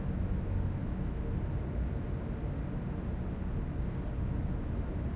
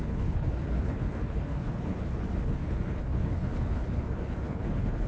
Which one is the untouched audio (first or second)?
first